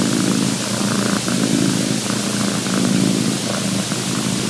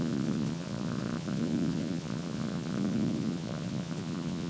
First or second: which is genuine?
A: first